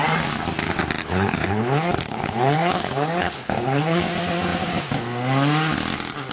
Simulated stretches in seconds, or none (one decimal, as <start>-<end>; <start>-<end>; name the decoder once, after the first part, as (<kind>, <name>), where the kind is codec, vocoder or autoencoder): 1.0-4.0 (codec, HILCodec)